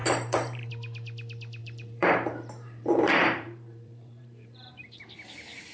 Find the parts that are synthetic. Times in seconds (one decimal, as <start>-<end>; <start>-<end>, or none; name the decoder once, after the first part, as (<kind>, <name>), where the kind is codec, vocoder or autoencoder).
0.0-0.7 (vocoder, BigVGAN v2); 1.6-5.0